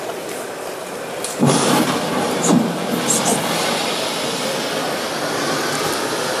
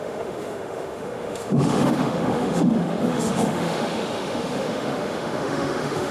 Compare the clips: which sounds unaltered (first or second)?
first